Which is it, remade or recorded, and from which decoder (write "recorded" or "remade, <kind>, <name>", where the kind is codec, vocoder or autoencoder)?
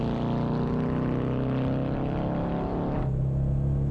recorded